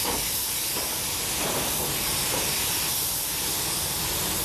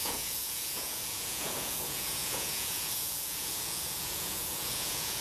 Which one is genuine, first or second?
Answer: first